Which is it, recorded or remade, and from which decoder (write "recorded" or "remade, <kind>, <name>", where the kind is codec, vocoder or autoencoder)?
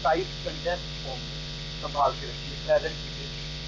remade, vocoder, Vocos